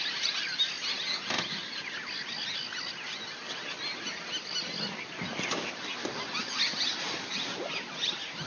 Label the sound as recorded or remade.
recorded